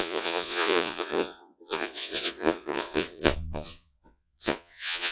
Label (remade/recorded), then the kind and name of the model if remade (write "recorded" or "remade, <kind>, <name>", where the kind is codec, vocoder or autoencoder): remade, vocoder, Vocos